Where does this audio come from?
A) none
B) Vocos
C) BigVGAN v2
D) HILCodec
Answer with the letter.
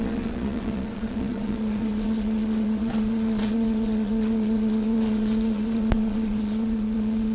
B